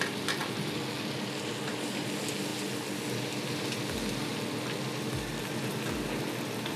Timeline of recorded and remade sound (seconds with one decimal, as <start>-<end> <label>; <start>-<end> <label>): 0.0-6.8 recorded